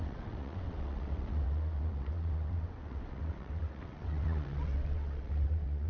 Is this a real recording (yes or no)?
no